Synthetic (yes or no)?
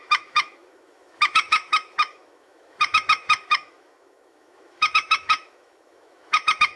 yes